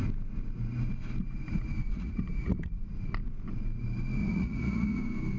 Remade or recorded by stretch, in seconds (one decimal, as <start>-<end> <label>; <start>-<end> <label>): 0.0-1.8 recorded; 1.8-3.1 remade; 3.1-4.2 recorded; 4.2-5.0 remade; 5.0-5.4 recorded